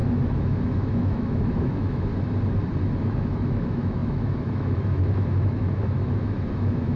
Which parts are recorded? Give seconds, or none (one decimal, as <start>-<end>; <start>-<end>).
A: 2.1-3.0